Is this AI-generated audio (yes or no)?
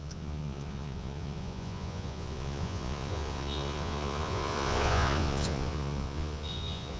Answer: yes